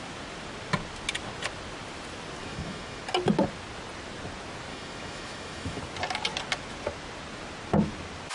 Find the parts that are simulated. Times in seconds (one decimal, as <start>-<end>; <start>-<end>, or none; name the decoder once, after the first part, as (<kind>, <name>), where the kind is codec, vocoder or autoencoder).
2.4-3.0 (autoencoder, DAC-VAE); 4.7-5.8